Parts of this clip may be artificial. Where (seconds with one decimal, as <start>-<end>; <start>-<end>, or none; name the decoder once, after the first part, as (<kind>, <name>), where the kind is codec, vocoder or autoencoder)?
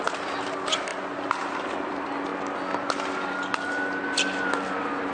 none